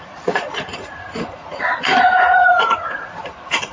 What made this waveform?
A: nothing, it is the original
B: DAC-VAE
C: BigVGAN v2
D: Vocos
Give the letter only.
D